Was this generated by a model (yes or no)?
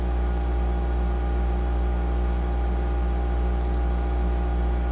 no